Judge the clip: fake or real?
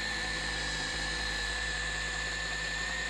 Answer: fake